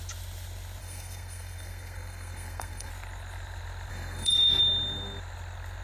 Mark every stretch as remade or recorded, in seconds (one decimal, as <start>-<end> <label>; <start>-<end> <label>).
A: 0.0-0.8 recorded; 0.8-2.9 remade; 2.9-3.9 recorded; 3.9-4.6 remade; 4.6-5.8 recorded